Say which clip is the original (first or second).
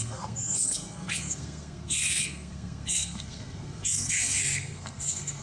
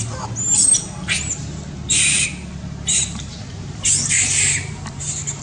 second